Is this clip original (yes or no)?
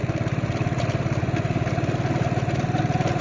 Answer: yes